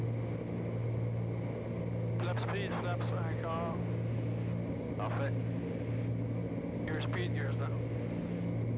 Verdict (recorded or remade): recorded